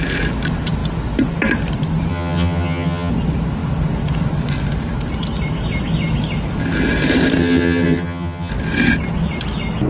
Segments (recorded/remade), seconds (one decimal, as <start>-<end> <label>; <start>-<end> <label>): 0.0-2.1 recorded; 2.1-3.1 remade; 3.1-7.4 recorded; 7.4-8.5 remade; 8.5-9.9 recorded